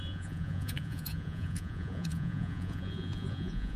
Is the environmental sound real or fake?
fake